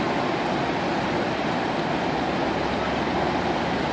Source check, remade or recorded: recorded